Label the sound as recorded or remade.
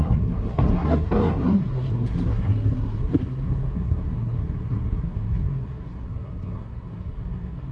remade